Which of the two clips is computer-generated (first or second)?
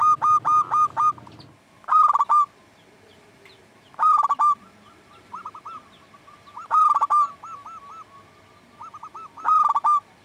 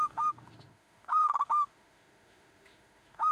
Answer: second